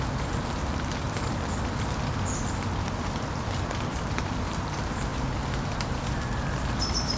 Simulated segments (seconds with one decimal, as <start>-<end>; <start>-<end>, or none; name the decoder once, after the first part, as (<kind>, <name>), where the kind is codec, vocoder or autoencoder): none